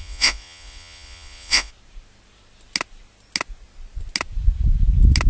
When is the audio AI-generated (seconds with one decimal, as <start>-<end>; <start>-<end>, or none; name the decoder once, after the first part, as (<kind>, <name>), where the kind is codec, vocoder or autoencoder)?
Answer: 0.0-1.7 (vocoder, Vocos)